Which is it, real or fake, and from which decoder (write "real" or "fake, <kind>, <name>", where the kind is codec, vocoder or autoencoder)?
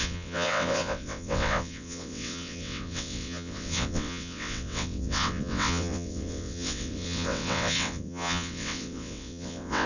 fake, vocoder, WaveNeXt